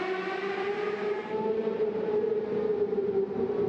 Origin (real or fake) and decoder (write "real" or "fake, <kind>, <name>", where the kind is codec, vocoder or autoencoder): fake, vocoder, BigVGAN v2